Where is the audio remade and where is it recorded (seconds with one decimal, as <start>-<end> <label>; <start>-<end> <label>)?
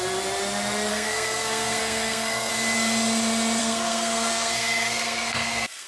0.0-0.9 recorded; 0.9-2.5 remade; 2.5-3.6 recorded; 3.6-5.9 remade